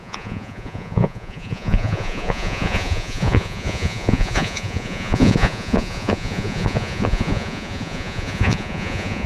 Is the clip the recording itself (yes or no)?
no